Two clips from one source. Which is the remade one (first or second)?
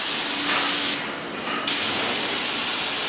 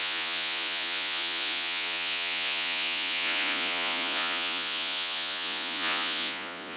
second